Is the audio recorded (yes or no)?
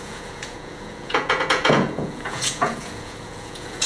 no